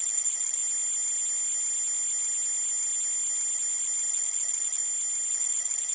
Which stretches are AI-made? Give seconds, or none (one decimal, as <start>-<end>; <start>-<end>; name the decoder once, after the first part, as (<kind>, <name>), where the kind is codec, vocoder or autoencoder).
0.0-0.6 (vocoder, Vocos); 4.1-4.8; 5.3-5.9